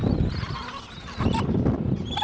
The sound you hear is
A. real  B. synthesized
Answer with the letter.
A